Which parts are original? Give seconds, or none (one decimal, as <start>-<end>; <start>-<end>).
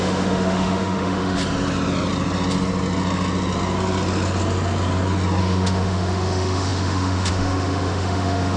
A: 1.4-5.4